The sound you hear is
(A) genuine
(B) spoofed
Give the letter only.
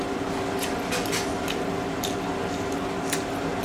A